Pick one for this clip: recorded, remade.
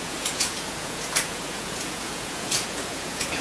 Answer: remade